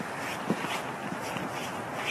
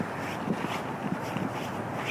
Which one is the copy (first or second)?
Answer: second